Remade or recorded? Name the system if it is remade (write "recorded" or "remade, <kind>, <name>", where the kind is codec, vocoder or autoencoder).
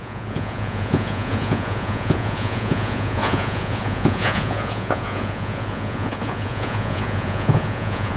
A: remade, vocoder, Vocos